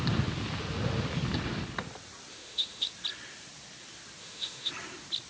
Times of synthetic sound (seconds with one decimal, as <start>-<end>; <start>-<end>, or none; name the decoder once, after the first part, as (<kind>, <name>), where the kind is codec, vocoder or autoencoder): 2.3-2.9 (autoencoder, DAC-VAE); 4.2-4.7